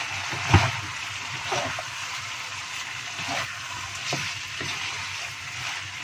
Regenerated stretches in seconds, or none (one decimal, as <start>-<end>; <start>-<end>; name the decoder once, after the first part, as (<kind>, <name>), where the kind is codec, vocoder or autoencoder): none